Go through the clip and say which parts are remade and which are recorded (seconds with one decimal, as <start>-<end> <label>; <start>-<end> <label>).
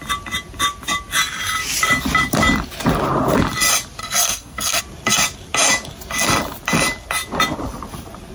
0.0-4.0 recorded; 4.0-4.8 remade; 4.8-8.3 recorded